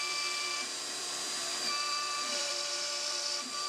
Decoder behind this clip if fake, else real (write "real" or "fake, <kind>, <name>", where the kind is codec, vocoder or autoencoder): fake, vocoder, BigVGAN v2